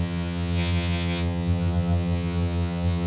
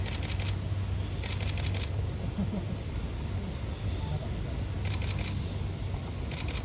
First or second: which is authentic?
second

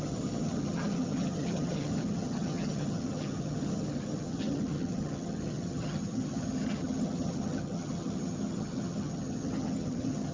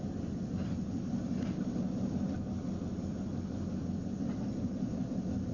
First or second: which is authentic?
second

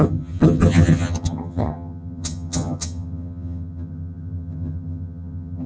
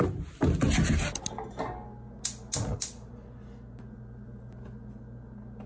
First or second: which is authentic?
second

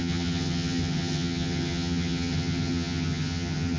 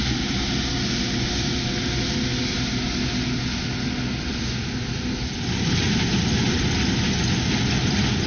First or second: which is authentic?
second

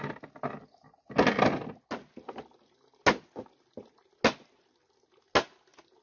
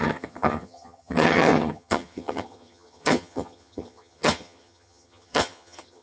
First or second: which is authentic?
first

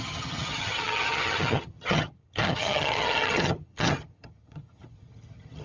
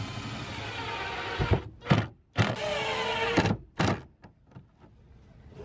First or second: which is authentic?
second